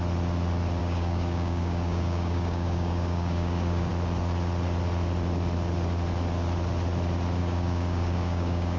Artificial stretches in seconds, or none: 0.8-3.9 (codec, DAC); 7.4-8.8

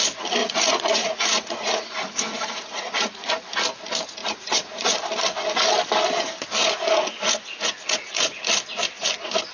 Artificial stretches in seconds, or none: 0.4-3.3 (vocoder, Vocos); 4.2-5.0; 6.6-8.4

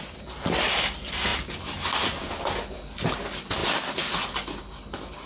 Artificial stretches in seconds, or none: none

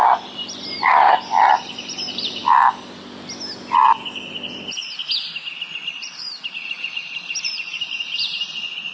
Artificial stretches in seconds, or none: 0.0-2.4 (vocoder, BigVGAN v2); 5.9-8.9

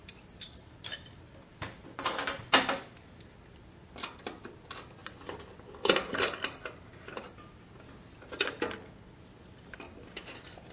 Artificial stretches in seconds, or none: none

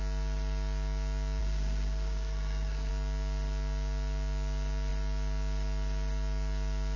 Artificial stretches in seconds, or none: 1.4-2.9 (codec, SNAC)

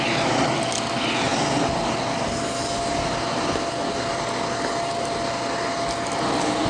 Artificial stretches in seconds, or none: none

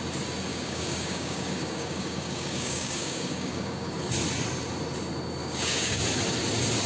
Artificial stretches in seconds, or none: 0.5-3.9 (codec, DAC); 5.4-6.0